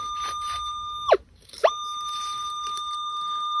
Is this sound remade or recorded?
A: remade